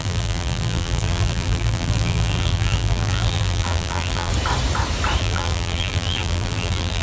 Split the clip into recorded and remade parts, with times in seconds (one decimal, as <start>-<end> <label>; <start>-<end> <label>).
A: 0.0-4.3 remade; 4.3-5.2 recorded; 5.2-7.0 remade